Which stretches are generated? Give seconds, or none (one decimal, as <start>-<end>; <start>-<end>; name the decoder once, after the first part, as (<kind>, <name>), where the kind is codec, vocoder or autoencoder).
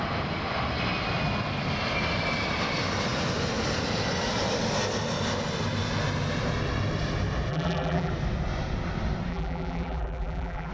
7.5-8.1 (vocoder, BigVGAN v2); 9.3-10.7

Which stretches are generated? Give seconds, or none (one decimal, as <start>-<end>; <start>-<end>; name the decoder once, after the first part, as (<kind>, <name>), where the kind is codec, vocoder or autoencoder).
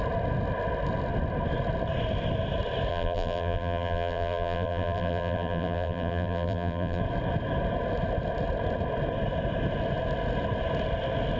2.9-7.0 (vocoder, BigVGAN v2)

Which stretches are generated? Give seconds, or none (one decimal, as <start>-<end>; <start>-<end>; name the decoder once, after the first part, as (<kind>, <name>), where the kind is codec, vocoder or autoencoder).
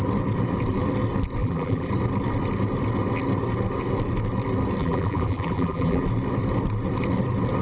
1.4-1.9 (vocoder, BigVGAN v2); 4.8-6.0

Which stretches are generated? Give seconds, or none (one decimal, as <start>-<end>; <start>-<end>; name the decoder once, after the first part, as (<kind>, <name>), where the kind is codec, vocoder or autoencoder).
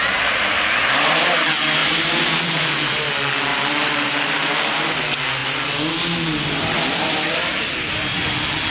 1.8-3.1 (vocoder, BigVGAN v2); 3.5-5.0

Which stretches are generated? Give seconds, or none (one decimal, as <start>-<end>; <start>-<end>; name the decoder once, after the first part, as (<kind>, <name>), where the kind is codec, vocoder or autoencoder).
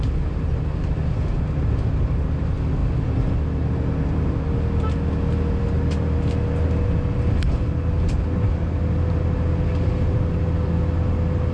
none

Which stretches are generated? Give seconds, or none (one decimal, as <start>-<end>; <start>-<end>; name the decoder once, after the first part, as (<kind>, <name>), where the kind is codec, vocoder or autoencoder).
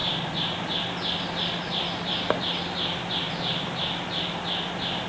none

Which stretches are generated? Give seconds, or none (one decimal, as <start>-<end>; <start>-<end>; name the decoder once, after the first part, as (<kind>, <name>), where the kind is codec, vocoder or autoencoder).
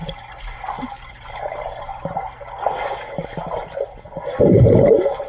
0.9-1.9 (vocoder, BigVGAN v2)